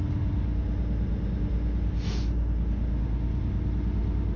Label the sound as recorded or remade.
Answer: recorded